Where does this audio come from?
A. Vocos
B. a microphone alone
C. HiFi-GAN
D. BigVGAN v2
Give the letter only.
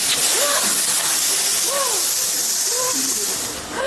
B